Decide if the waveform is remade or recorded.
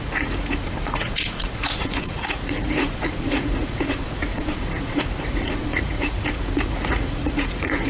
remade